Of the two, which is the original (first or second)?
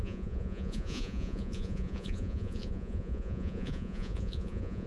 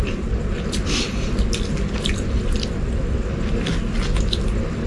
second